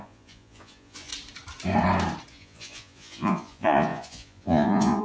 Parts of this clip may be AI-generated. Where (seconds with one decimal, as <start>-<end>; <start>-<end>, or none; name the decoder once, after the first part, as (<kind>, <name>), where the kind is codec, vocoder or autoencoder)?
0.0-1.1 (vocoder, Vocos); 2.3-5.0